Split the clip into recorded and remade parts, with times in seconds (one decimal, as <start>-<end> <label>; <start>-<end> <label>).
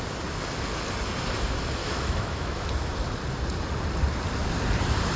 0.0-1.8 recorded; 1.8-2.7 remade; 2.7-5.2 recorded